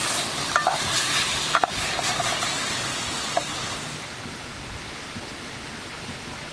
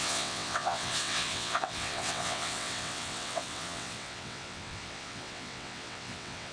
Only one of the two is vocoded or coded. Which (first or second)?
second